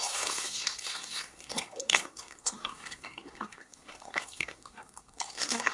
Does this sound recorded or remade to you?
remade